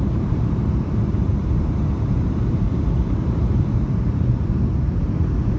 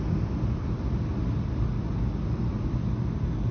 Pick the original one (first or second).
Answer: second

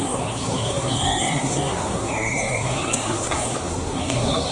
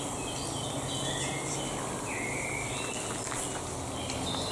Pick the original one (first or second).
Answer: second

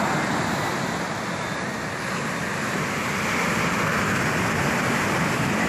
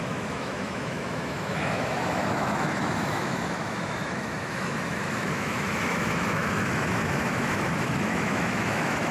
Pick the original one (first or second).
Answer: first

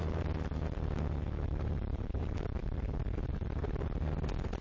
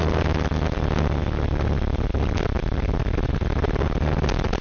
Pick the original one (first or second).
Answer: second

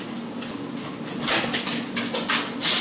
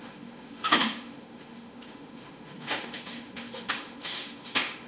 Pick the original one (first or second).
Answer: first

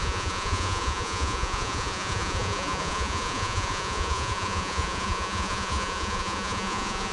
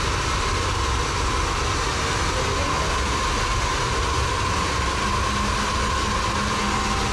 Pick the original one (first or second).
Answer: second